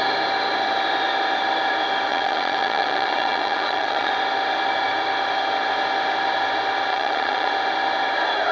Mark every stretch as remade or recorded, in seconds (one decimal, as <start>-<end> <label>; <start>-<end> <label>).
0.0-2.1 recorded; 2.1-4.1 remade; 4.1-6.9 recorded; 6.9-7.5 remade; 7.5-8.5 recorded